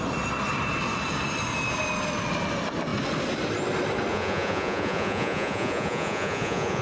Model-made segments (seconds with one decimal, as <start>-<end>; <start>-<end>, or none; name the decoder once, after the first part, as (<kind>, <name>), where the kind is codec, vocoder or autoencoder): 4.1-6.8 (vocoder, Vocos)